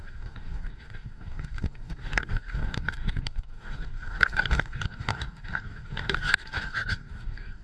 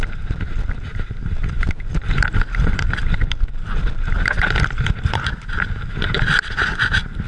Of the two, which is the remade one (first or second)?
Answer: first